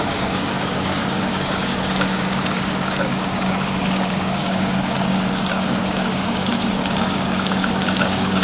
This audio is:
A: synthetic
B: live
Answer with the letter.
A